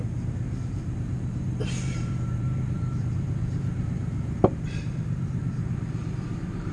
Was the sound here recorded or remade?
remade